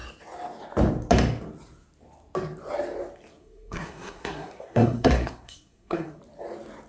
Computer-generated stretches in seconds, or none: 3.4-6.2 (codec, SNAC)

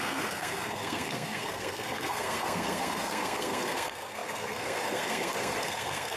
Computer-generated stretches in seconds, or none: 0.0-6.2 (codec, SNAC)

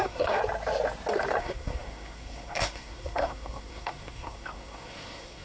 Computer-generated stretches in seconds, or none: 0.0-0.4 (codec, SNAC); 1.4-5.4

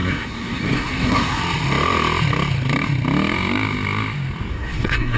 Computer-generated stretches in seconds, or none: 0.0-1.4 (codec, SNAC); 4.5-5.2

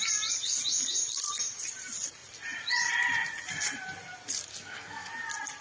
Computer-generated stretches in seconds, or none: 4.5-5.1 (codec, SNAC)

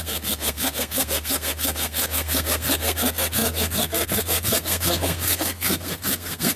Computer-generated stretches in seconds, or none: 0.0-6.6 (codec, SNAC)

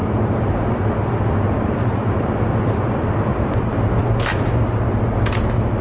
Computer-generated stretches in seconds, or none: none

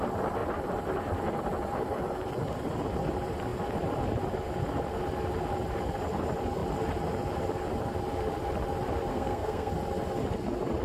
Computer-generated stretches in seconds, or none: 9.1-9.7 (codec, SNAC)